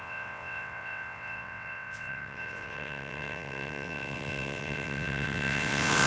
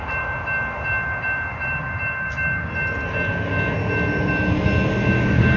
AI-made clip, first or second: first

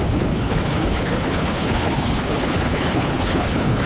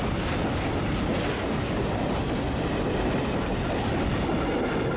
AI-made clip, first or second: first